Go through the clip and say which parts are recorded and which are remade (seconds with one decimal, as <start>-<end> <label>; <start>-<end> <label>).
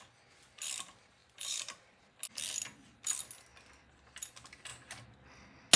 0.0-1.2 recorded; 1.2-2.0 remade; 2.0-5.8 recorded